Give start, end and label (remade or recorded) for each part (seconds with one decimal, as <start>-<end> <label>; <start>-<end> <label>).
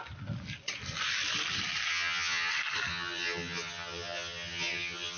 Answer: 0.0-1.9 recorded; 1.9-2.5 remade; 2.5-2.9 recorded; 2.9-5.2 remade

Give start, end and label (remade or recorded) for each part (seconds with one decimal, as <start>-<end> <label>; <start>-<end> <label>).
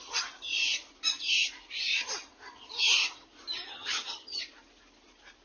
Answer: 0.0-3.7 recorded; 3.7-4.4 remade; 4.4-5.4 recorded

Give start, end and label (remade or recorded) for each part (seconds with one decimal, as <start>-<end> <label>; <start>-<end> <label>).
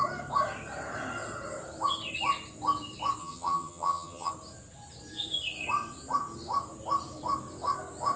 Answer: 0.0-3.2 recorded; 3.2-4.3 remade; 4.3-8.2 recorded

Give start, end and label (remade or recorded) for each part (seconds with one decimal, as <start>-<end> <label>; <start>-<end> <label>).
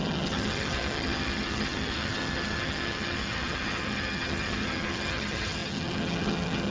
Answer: 0.0-6.7 remade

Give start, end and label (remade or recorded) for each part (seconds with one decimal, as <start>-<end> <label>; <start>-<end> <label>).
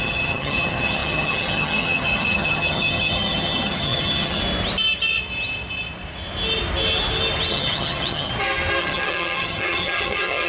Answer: 0.0-4.4 remade; 4.4-7.5 recorded; 7.5-8.3 remade; 8.3-8.8 recorded; 8.8-10.5 remade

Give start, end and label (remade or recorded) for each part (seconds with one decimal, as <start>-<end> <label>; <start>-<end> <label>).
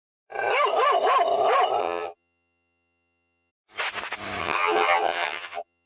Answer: 0.0-1.8 recorded; 1.8-3.5 remade; 3.5-4.4 recorded; 4.4-5.9 remade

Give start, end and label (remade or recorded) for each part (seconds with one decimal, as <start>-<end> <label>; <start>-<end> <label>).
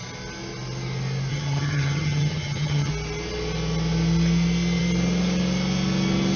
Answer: 0.0-1.3 recorded; 1.3-2.9 remade; 2.9-6.4 recorded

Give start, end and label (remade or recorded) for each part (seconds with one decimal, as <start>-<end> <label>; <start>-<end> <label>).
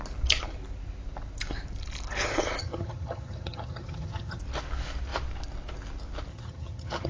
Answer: 0.0-2.6 recorded; 2.6-4.4 remade; 4.4-6.3 recorded; 6.3-7.1 remade